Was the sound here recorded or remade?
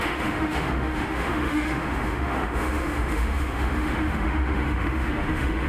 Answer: remade